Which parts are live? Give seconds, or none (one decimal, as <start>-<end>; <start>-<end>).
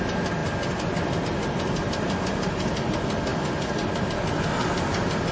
0.0-5.3